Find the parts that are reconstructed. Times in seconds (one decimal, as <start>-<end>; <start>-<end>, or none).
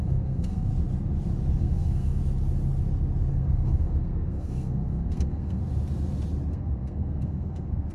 0.0-0.7; 1.6-2.2; 3.3-5.6; 6.5-7.9